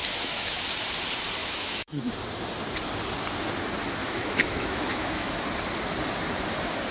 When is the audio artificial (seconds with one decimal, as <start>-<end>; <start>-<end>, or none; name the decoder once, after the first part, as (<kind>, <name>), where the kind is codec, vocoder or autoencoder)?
0.0-0.6 (autoencoder, DAC-VAE); 1.4-2.1; 4.0-5.3